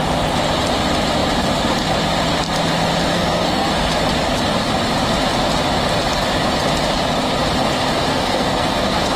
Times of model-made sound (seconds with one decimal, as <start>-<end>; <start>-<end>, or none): 3.1-3.9; 8.1-9.2